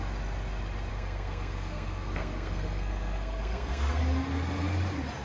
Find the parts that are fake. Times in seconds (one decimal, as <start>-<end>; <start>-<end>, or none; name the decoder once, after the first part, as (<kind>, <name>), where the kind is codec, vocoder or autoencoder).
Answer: 0.9-4.0 (codec, SNAC)